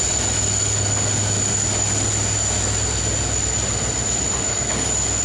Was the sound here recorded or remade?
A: recorded